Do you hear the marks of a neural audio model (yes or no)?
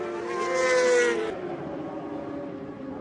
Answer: no